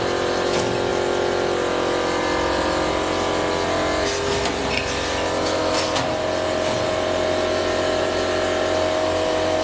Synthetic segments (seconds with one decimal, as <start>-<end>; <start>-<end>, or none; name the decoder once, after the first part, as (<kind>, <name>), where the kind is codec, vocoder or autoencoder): none